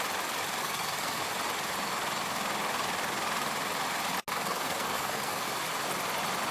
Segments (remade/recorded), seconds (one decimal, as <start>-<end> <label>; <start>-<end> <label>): 0.0-0.6 recorded; 0.6-1.2 remade; 1.2-4.3 recorded; 4.3-5.5 remade; 5.5-6.5 recorded